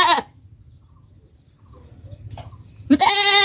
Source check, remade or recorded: recorded